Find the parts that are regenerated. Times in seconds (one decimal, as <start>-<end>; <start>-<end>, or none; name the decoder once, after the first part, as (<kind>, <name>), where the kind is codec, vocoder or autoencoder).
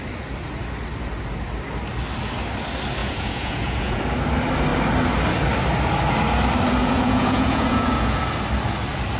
3.0-4.0 (vocoder, Vocos); 6.8-8.2